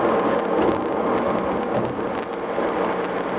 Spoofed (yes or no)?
no